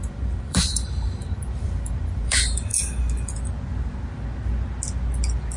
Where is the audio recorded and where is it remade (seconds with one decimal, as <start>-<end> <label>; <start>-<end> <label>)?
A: 0.0-2.7 remade; 2.7-5.6 recorded